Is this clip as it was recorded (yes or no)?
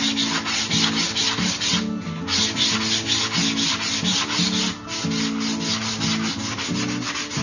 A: yes